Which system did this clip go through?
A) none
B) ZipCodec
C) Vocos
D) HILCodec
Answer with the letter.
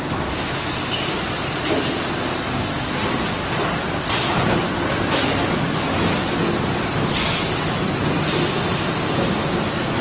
A